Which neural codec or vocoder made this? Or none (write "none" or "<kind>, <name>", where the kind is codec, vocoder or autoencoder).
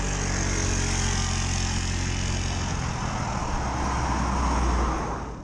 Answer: none